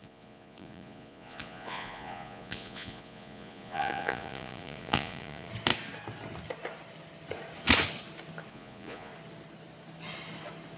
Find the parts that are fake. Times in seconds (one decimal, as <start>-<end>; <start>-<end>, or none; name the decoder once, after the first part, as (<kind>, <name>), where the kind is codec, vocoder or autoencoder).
0.0-5.5 (vocoder, Vocos); 8.5-9.1